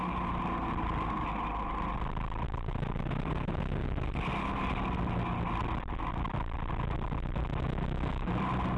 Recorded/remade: recorded